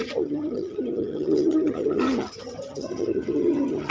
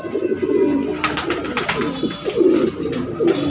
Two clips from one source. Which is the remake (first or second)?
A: first